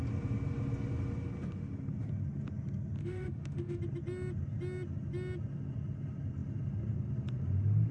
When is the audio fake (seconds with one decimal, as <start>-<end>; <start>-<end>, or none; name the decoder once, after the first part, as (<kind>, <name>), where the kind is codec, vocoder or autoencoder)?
3.0-3.8 (autoencoder, DAC-VAE)